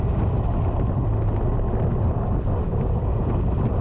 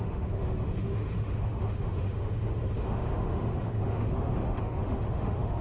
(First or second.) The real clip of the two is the first